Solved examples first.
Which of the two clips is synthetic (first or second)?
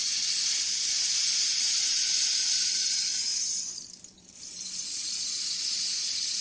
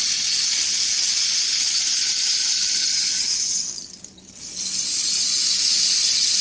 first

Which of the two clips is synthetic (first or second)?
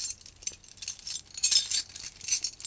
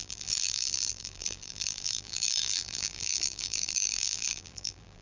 second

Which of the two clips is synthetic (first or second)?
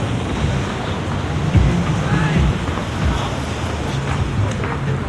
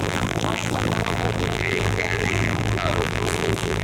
second